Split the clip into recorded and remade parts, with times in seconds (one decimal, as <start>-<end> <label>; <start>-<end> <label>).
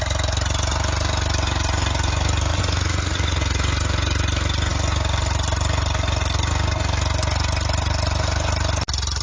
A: 0.0-2.5 recorded; 2.5-3.4 remade; 3.4-9.2 recorded